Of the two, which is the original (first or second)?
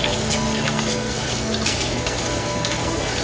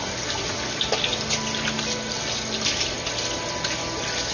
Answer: second